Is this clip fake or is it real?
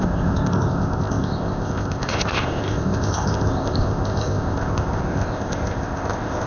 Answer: fake